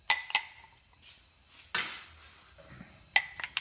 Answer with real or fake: real